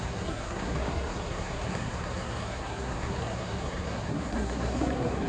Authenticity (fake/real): fake